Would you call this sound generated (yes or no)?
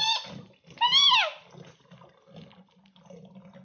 no